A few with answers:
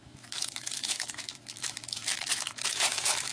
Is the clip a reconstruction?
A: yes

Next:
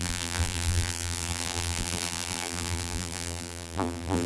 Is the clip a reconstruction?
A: yes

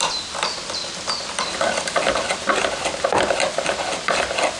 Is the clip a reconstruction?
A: no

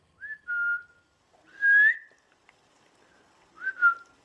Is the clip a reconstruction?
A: no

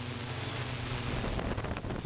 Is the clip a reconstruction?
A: no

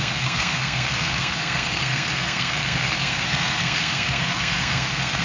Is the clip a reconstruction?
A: yes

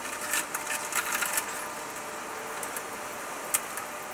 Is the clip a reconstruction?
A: no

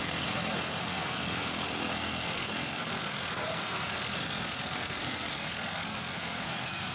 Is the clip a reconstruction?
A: yes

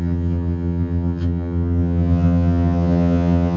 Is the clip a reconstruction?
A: yes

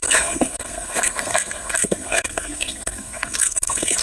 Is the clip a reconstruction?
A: yes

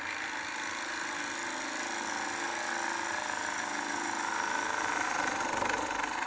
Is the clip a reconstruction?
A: no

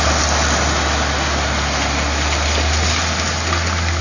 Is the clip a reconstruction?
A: no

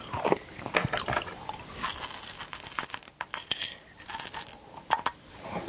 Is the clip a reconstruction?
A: no